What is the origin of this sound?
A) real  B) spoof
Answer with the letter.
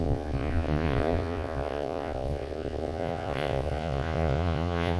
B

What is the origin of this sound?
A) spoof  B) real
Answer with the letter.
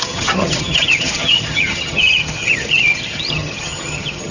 A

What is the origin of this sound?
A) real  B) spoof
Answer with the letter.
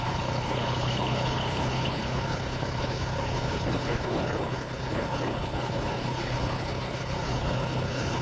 B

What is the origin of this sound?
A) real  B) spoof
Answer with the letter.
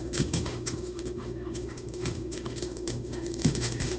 B